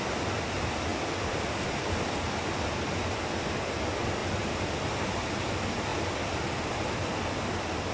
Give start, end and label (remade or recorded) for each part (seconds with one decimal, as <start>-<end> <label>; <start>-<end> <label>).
0.0-0.9 recorded; 0.9-2.8 remade; 2.8-4.2 recorded; 4.2-5.1 remade; 5.1-7.9 recorded

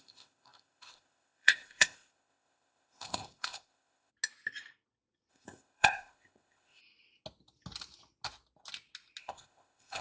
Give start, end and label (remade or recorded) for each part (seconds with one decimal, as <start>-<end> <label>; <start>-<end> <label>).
0.0-4.1 remade; 4.1-5.3 recorded; 5.3-6.8 remade; 6.8-9.2 recorded; 9.2-10.0 remade